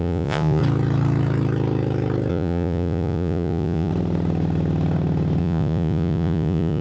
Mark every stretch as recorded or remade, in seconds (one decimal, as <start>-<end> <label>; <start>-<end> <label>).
0.0-0.6 remade; 0.6-2.3 recorded; 2.3-3.9 remade; 3.9-5.4 recorded; 5.4-6.8 remade